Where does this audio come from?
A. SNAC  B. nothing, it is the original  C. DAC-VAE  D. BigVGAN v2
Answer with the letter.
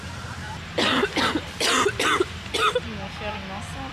B